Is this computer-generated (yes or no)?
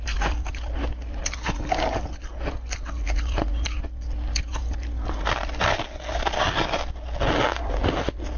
no